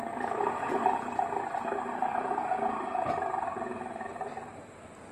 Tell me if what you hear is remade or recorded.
recorded